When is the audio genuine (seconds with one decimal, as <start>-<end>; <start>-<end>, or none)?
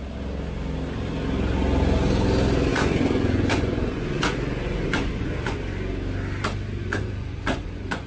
0.0-2.7; 5.6-6.8